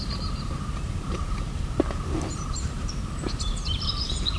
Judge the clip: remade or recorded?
remade